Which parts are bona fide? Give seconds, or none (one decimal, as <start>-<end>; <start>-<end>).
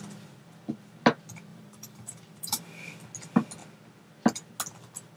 0.0-1.5; 2.8-5.2